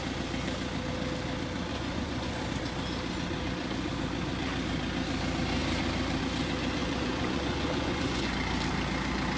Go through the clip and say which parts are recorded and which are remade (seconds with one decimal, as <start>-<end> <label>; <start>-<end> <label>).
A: 0.0-1.7 recorded; 1.7-2.4 remade; 2.4-6.8 recorded; 6.8-8.3 remade; 8.3-9.4 recorded

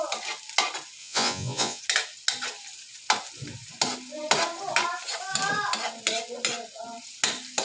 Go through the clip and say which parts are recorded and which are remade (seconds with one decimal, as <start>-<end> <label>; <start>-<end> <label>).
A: 0.0-1.0 recorded; 1.0-1.8 remade; 1.8-7.6 recorded

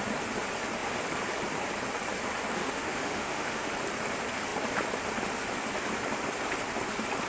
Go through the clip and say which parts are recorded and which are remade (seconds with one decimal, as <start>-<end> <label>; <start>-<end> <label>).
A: 0.0-2.6 recorded; 2.6-3.7 remade; 3.7-7.3 recorded

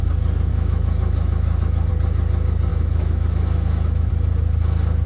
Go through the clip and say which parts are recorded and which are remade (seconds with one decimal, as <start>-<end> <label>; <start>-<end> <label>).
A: 0.0-0.5 recorded; 0.5-1.9 remade; 1.9-2.7 recorded; 2.7-4.1 remade; 4.1-5.1 recorded

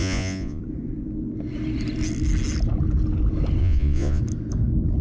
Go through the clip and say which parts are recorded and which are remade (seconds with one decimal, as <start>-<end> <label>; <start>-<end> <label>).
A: 0.0-0.6 remade; 0.6-3.6 recorded; 3.6-4.2 remade; 4.2-5.0 recorded

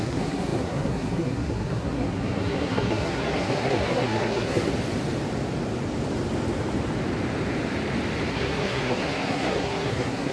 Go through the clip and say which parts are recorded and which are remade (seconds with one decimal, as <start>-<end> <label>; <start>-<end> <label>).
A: 0.0-4.7 remade; 4.7-8.3 recorded; 8.3-10.3 remade